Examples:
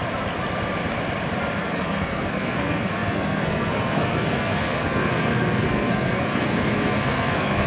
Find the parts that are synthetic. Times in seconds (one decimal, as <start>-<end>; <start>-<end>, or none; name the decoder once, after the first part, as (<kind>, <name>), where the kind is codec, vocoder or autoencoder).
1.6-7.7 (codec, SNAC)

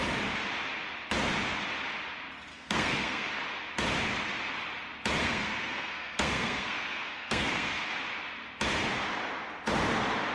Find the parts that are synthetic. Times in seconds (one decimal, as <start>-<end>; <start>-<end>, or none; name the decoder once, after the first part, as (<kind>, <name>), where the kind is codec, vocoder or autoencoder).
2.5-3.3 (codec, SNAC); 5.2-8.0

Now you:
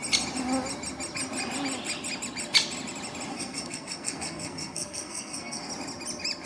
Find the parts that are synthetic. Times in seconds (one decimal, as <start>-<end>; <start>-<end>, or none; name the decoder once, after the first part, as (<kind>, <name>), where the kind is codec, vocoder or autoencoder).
3.3-5.7 (codec, SNAC)

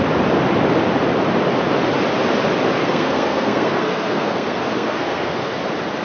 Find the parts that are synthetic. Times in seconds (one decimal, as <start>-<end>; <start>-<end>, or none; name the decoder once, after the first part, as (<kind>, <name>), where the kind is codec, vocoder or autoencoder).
2.8-5.6 (codec, SNAC)

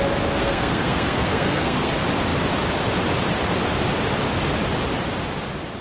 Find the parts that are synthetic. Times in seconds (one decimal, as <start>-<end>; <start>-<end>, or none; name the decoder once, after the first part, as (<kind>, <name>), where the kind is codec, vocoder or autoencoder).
0.4-1.9 (codec, SNAC)

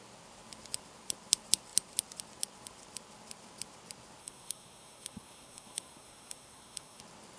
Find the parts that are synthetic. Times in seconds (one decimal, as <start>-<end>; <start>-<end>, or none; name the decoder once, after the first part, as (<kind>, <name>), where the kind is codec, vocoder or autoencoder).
4.2-7.0 (codec, SNAC)